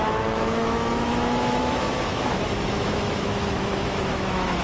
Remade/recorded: remade